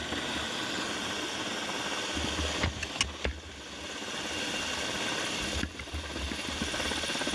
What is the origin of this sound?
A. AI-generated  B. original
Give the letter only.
B